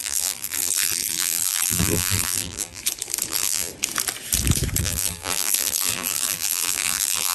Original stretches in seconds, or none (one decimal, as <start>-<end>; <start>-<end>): 2.8-3.3; 3.7-4.8